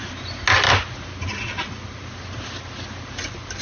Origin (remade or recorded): recorded